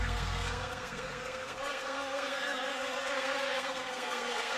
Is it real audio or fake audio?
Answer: fake